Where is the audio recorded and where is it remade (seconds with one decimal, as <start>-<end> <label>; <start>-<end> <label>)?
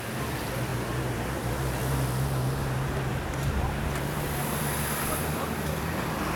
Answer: 0.0-3.1 recorded; 3.1-6.0 remade; 6.0-6.4 recorded